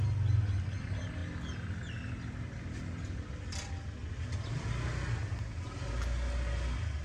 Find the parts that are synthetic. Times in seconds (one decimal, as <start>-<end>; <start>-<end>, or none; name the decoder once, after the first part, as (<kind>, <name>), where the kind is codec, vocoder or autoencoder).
none